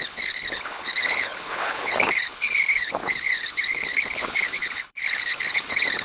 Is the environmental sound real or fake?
fake